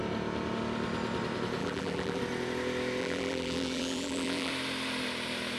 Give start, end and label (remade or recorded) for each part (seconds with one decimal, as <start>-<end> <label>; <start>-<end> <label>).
0.0-1.6 recorded; 1.6-2.2 remade; 2.2-3.0 recorded; 3.0-4.5 remade; 4.5-5.6 recorded